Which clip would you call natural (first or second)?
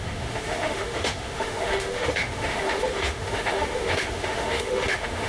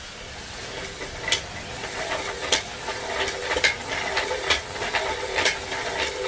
second